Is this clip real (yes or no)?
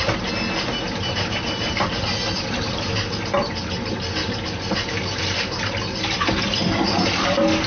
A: yes